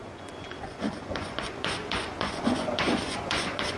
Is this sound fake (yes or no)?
yes